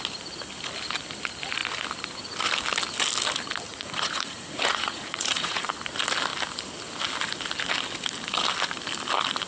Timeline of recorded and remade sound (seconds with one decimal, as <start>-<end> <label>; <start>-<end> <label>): 0.0-3.7 recorded; 3.7-5.7 remade; 5.7-9.5 recorded